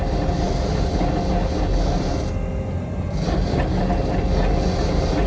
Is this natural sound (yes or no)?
yes